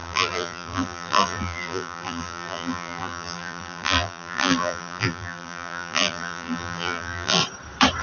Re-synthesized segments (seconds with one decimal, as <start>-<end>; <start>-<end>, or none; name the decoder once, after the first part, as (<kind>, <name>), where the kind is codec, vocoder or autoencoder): 0.0-7.4 (vocoder, BigVGAN v2)